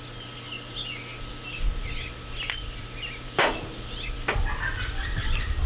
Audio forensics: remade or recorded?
recorded